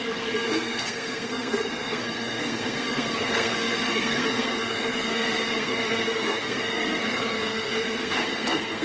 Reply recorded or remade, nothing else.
remade